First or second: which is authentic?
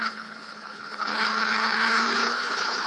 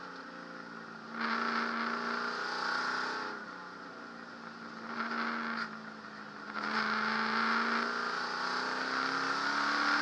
second